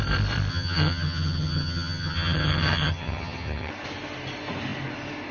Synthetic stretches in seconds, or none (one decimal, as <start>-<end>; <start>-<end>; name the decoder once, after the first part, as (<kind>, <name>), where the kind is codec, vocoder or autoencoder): 0.5-3.7 (vocoder, HiFi-GAN)